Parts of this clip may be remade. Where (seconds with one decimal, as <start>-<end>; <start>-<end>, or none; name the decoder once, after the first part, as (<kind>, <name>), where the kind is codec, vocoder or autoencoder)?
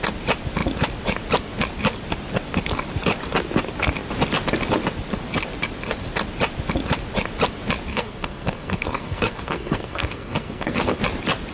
7.9-11.0 (codec, SNAC)